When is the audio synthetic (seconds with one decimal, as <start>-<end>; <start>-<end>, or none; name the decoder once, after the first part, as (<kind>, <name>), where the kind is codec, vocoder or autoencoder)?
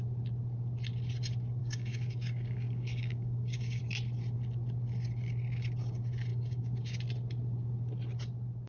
1.6-3.8 (codec, DAC); 6.3-7.0